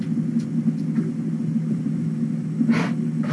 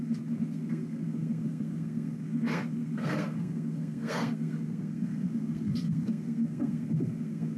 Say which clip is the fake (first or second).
second